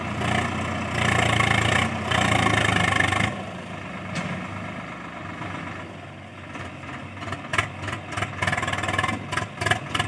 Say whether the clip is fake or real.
real